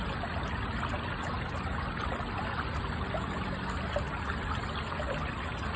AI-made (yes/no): no